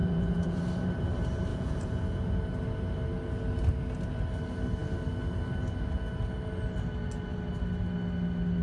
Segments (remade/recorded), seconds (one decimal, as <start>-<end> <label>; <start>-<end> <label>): 0.0-0.6 remade; 0.6-1.5 recorded; 1.5-2.4 remade; 2.4-8.6 recorded

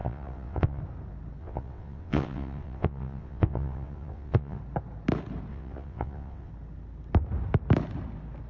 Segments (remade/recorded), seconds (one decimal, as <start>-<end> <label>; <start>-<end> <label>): 0.0-0.8 remade; 0.8-1.4 recorded; 1.4-4.6 remade; 4.6-5.5 recorded; 5.5-6.5 remade; 6.5-8.5 recorded